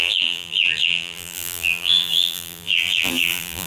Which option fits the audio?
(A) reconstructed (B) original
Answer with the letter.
A